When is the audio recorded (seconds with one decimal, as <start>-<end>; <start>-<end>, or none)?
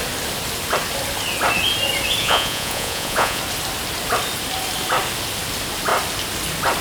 0.0-2.2; 3.4-6.8